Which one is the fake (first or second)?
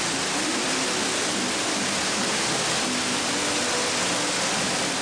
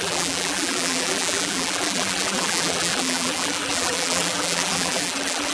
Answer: second